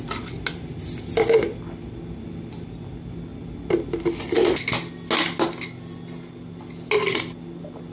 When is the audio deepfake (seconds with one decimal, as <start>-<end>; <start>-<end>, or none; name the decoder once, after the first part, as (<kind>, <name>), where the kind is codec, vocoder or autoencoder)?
none